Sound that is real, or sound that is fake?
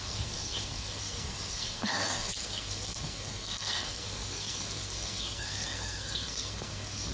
fake